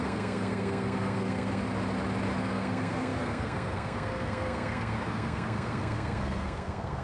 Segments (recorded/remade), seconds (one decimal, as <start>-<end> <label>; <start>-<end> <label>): 0.0-1.6 remade; 1.6-2.4 recorded; 2.4-7.0 remade

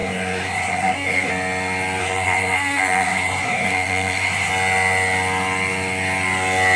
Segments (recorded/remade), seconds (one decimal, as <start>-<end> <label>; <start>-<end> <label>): 0.0-1.3 remade; 1.3-2.0 recorded; 2.0-4.5 remade; 4.5-6.8 recorded

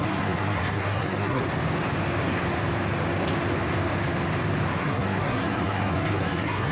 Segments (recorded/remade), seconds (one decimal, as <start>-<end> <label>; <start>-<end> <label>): 0.0-1.4 remade; 1.4-4.8 recorded; 4.8-6.7 remade

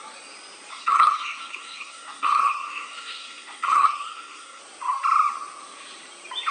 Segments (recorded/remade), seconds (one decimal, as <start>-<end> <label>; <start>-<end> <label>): 0.0-0.7 recorded; 0.7-4.6 remade; 4.6-6.5 recorded

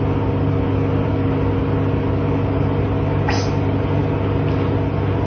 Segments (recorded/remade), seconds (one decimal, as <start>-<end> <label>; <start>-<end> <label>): 0.0-5.3 recorded